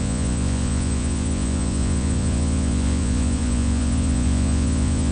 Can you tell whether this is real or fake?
fake